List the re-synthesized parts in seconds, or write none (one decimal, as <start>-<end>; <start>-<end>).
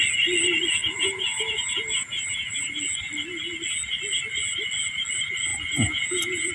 0.8-2.7; 5.5-6.5